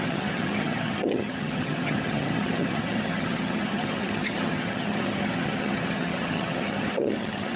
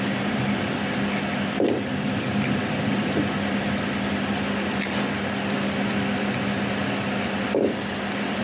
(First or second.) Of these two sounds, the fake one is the first